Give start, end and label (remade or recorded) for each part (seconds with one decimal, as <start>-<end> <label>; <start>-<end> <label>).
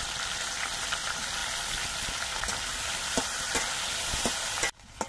0.0-5.1 recorded